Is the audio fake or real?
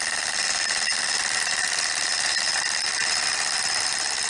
real